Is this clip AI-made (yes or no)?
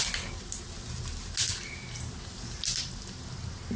no